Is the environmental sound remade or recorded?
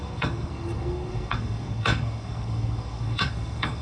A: remade